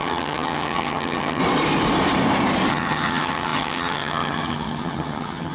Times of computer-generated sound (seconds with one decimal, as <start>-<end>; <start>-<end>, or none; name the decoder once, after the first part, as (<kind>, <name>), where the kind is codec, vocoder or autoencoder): 0.0-1.4 (vocoder, HiFi-GAN); 2.7-5.5